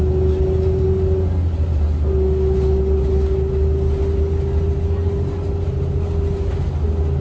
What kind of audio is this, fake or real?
real